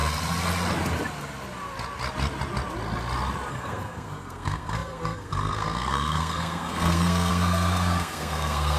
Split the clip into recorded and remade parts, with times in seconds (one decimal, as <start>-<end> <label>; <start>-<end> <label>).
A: 0.0-3.5 recorded; 3.5-8.8 remade